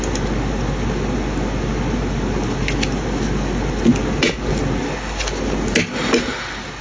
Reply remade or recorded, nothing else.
recorded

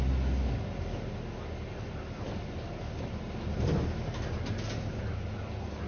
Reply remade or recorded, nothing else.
recorded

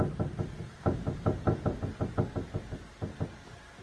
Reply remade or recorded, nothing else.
recorded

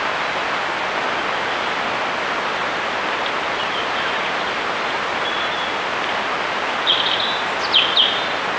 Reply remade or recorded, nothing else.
recorded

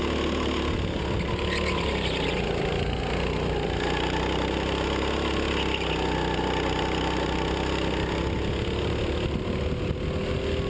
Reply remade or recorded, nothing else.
recorded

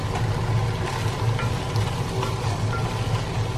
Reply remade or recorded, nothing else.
recorded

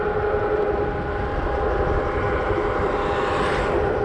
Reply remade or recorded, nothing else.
recorded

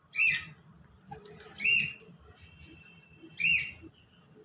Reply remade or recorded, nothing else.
recorded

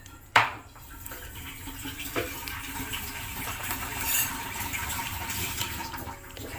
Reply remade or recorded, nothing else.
remade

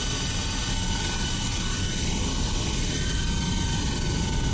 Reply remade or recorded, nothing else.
recorded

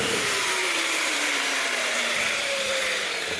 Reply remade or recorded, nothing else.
remade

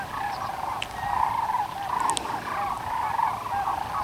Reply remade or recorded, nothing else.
recorded